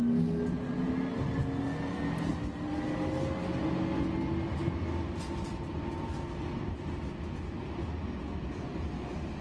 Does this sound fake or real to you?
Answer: real